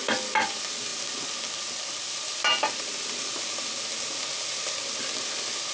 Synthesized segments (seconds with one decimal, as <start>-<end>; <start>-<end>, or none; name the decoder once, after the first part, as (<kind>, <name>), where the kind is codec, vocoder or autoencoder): none